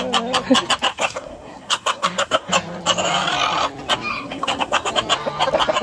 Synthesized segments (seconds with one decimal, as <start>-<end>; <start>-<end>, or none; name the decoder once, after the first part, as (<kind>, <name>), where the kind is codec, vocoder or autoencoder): 0.9-2.5 (codec, SNAC); 4.1-4.9